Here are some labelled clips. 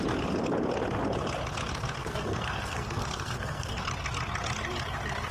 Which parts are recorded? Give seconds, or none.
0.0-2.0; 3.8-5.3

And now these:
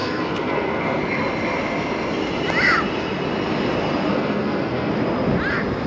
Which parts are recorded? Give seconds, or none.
1.0-4.1; 4.9-5.9